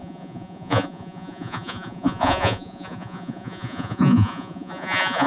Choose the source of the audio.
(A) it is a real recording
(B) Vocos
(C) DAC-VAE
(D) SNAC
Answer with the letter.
B